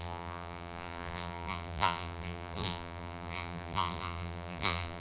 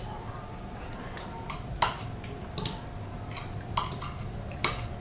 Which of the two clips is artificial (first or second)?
first